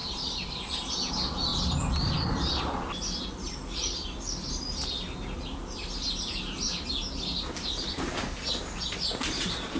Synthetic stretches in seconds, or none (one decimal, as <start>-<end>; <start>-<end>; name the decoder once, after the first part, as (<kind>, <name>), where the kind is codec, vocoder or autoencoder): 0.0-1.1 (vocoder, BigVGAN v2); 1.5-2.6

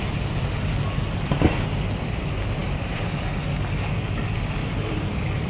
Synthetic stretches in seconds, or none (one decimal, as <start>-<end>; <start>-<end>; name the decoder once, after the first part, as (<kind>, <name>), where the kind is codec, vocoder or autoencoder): 2.6-3.2 (vocoder, BigVGAN v2); 4.6-5.5

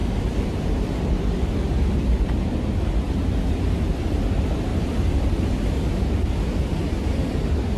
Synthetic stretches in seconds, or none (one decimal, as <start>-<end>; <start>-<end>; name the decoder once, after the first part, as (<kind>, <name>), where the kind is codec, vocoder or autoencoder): 4.7-6.1 (vocoder, BigVGAN v2); 6.8-7.3

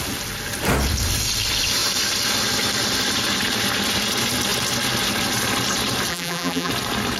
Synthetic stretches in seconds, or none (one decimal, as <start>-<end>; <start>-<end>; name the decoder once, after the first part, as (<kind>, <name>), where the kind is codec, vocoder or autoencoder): 6.1-6.7 (vocoder, BigVGAN v2)

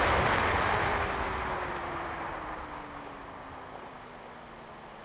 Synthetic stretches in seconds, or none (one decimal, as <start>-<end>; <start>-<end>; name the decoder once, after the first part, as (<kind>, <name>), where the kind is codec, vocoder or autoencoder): 1.8-2.6 (vocoder, BigVGAN v2); 3.2-3.9

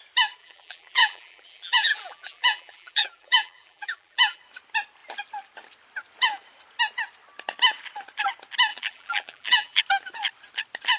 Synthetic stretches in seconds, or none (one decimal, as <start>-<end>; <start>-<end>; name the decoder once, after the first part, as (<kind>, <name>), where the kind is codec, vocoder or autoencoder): 0.4-4.4 (vocoder, BigVGAN v2); 8.7-9.8

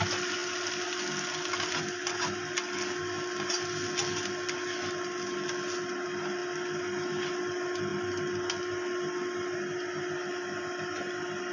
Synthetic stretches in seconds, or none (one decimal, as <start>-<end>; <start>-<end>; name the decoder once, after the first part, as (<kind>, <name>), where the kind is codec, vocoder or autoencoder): none

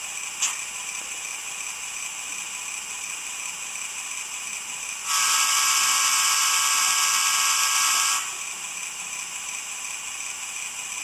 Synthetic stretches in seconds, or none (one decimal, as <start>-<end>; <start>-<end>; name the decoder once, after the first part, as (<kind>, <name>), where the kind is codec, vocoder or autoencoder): 5.0-6.4 (vocoder, BigVGAN v2)